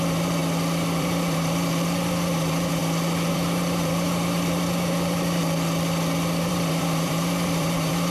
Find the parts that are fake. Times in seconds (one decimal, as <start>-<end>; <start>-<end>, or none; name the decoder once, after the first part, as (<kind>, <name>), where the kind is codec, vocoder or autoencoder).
0.0-0.4 (vocoder, BigVGAN v2); 1.0-2.8; 3.3-5.4; 6.5-8.1